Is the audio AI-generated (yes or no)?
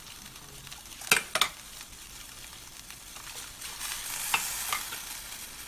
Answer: no